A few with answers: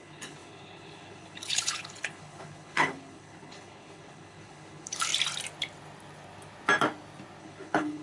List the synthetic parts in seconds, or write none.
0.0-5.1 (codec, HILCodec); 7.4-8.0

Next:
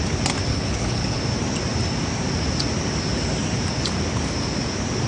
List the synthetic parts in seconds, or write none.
0.5-1.2 (codec, HILCodec)

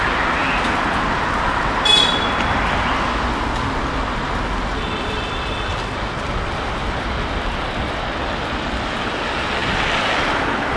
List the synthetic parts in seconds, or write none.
none

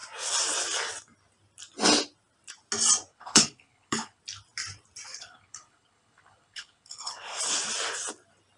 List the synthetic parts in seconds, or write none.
3.1-4.2 (codec, HILCodec); 5.1-7.4

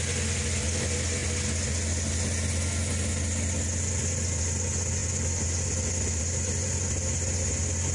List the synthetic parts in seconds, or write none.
none

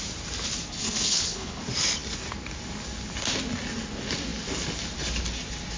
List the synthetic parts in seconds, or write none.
0.7-1.6 (codec, HILCodec)

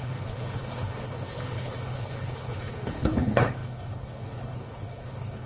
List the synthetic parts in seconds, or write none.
0.0-5.5 (codec, HILCodec)

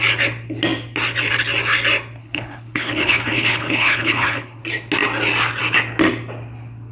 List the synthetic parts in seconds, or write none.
2.2-4.6 (codec, HILCodec)